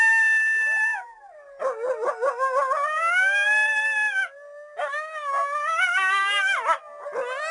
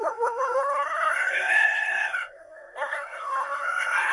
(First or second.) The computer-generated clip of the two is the second